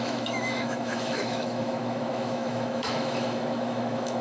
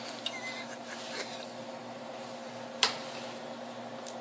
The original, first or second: second